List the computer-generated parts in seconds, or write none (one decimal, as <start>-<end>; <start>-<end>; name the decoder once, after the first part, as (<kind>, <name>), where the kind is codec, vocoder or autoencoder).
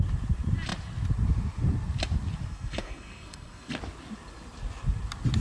2.5-3.7 (codec, SNAC)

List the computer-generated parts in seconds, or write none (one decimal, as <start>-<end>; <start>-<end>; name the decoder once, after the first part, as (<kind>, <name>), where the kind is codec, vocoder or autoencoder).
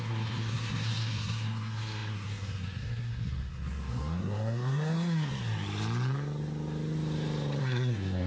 0.0-5.3 (codec, SNAC); 7.6-8.3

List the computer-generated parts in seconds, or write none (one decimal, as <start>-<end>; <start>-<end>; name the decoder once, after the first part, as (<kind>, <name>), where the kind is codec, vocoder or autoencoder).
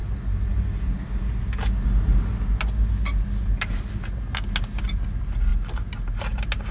none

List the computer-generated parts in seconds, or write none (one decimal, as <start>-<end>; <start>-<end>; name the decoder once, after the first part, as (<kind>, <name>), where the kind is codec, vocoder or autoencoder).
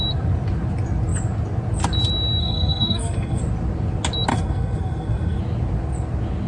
2.4-3.4 (codec, SNAC); 4.3-5.4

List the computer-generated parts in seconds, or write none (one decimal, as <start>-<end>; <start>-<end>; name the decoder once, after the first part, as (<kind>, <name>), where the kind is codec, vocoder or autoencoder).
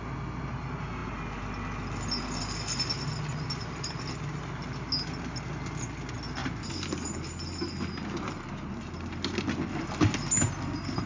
none